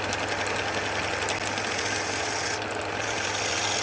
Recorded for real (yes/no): yes